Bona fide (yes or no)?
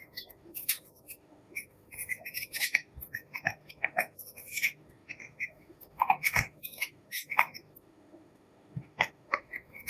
no